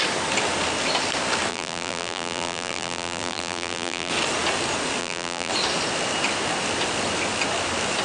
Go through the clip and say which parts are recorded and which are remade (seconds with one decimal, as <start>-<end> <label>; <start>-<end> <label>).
0.0-1.5 recorded; 1.5-4.1 remade; 4.1-5.0 recorded; 5.0-5.5 remade; 5.5-8.0 recorded